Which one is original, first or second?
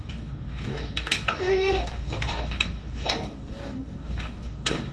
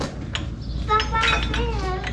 second